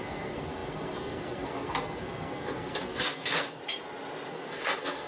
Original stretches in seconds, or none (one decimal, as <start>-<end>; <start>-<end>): 3.6-4.3